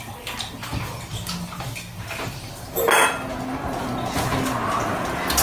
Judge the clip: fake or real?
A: real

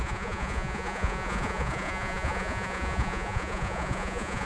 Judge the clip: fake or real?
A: fake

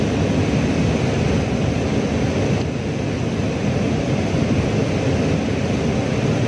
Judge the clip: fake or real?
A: real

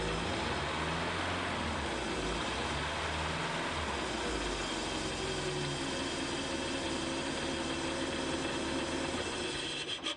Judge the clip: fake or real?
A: real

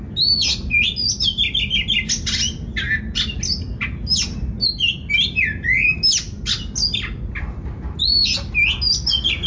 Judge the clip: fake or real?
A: real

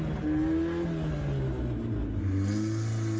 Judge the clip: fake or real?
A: real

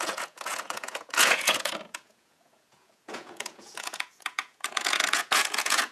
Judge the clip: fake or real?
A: fake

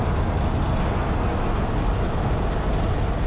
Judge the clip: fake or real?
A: real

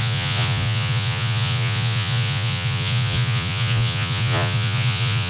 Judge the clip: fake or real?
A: fake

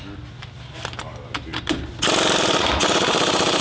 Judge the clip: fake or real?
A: real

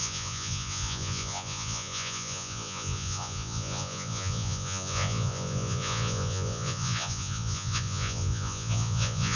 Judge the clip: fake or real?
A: fake